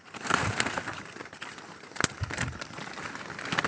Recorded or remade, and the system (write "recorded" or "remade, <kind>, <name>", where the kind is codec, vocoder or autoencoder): recorded